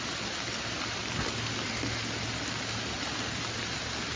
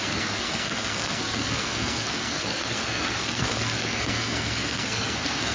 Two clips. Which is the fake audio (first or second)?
second